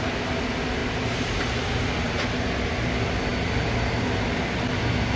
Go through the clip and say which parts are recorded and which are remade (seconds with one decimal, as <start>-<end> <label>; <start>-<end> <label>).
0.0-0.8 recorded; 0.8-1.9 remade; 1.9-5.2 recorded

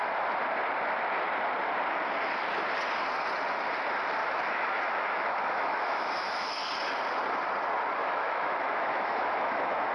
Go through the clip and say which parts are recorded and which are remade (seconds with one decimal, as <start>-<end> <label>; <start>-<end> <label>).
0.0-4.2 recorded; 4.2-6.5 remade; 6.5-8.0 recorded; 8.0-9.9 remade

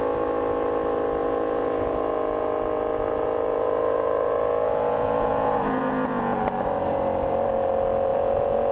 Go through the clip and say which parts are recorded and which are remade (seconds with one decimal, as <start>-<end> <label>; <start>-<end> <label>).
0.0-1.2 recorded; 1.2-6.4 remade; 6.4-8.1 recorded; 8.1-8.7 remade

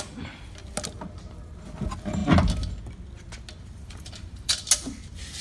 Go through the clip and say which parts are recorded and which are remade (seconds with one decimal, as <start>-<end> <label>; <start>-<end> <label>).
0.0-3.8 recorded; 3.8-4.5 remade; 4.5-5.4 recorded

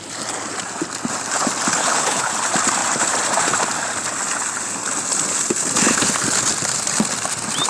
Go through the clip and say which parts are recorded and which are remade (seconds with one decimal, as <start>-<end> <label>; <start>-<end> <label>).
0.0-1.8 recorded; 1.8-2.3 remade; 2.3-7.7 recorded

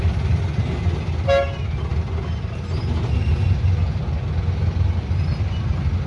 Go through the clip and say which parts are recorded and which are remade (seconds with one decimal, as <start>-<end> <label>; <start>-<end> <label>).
0.0-6.1 recorded

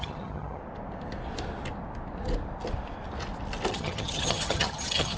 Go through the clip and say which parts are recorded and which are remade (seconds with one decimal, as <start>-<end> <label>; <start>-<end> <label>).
0.0-0.6 remade; 0.6-3.7 recorded; 3.7-5.2 remade